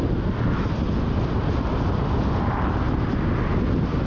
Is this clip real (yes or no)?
yes